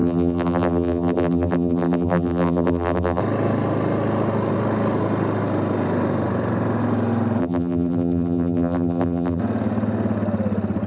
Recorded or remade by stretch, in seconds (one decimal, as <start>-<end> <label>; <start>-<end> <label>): 0.0-3.2 remade; 3.2-7.4 recorded; 7.4-9.4 remade; 9.4-10.9 recorded